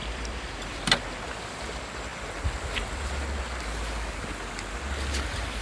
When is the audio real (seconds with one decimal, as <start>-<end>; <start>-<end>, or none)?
1.0-5.6

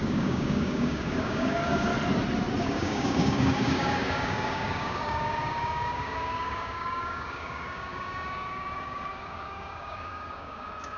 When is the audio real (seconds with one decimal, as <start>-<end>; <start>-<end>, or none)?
1.9-2.6